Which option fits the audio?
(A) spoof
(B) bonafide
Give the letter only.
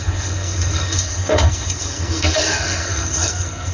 A